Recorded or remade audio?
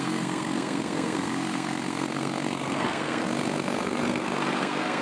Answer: remade